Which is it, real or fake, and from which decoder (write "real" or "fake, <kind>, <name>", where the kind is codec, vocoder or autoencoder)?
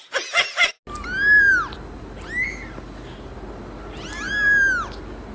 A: real